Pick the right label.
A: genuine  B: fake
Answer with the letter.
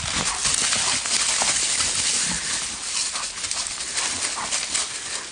A